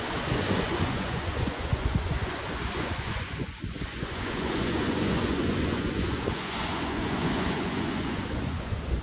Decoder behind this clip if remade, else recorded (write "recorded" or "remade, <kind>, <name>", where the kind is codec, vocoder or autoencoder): remade, vocoder, Vocos